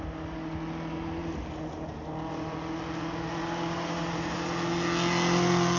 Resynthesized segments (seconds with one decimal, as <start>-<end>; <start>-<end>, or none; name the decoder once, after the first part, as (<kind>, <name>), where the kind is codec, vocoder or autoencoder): none